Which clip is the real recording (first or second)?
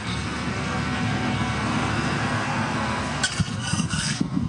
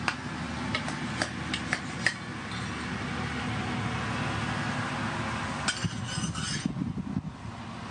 second